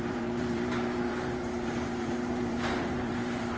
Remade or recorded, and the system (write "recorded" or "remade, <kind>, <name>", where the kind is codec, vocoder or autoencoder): remade, vocoder, BigVGAN v2